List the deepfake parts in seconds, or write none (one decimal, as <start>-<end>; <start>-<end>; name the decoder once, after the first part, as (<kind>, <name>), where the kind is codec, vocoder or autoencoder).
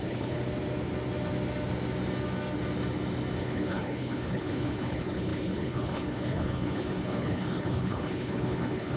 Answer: 0.0-0.4 (codec, HILCodec); 3.4-9.0